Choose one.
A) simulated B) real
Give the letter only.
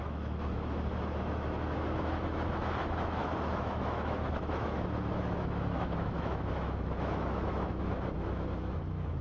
A